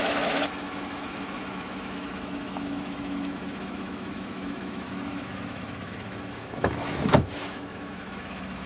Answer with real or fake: fake